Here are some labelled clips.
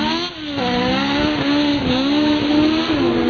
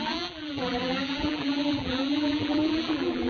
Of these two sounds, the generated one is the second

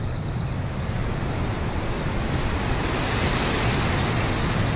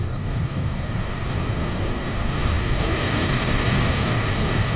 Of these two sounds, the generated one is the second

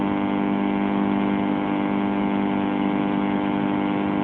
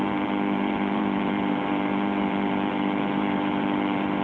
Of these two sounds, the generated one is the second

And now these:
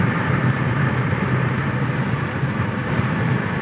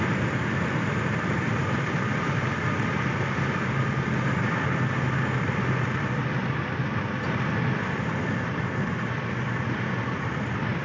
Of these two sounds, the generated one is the first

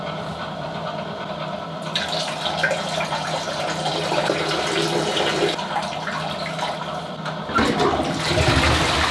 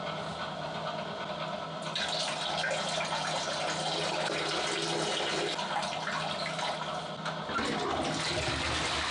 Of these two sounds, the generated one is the first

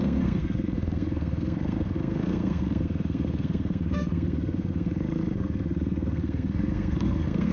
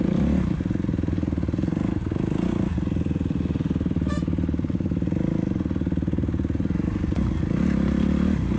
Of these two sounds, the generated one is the first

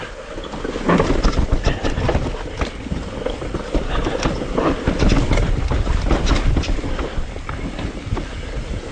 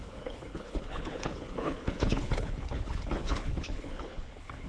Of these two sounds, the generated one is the second